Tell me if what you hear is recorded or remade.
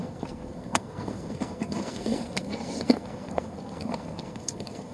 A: remade